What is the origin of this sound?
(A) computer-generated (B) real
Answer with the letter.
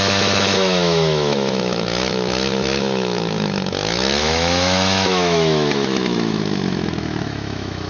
A